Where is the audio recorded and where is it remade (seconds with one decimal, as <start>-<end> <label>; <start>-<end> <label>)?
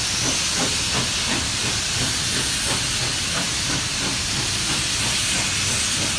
0.0-6.2 recorded